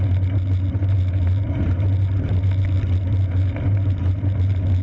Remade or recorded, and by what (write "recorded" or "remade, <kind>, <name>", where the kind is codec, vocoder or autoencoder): recorded